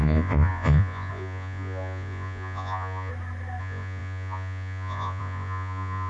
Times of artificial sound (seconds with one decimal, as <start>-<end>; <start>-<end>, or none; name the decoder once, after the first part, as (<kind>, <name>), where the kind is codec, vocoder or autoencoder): 0.0-3.1 (vocoder, Vocos); 3.6-6.1